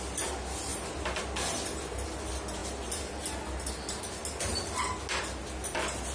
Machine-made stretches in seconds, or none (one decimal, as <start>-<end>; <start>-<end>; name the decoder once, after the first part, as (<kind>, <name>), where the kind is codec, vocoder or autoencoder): none